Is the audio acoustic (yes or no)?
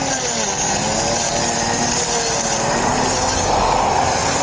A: yes